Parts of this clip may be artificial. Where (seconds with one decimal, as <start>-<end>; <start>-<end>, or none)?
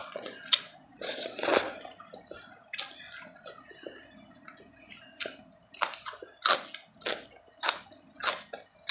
0.0-1.5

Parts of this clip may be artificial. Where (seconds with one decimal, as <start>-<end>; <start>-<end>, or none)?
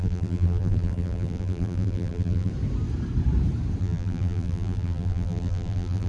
0.0-2.5; 3.8-6.1